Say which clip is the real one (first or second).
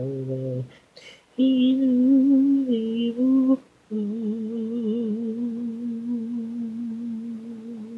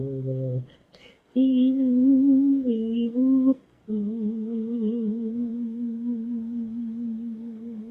first